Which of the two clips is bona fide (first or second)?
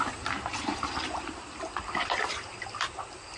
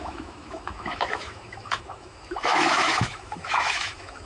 first